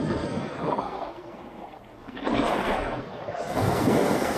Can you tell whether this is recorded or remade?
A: remade